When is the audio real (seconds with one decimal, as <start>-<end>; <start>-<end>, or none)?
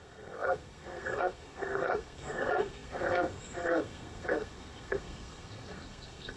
none